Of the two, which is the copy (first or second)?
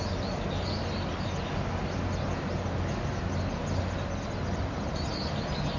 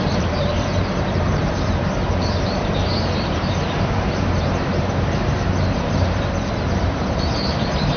second